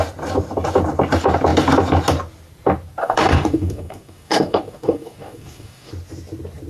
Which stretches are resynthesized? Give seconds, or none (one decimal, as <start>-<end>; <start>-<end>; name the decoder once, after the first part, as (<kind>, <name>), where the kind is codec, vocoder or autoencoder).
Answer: 3.0-5.9 (codec, DAC)